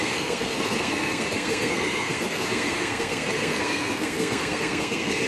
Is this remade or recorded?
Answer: remade